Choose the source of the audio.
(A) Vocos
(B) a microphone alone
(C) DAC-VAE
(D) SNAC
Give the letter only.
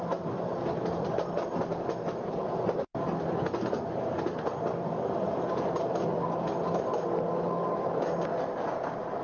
B